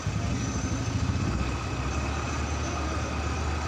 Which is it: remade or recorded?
recorded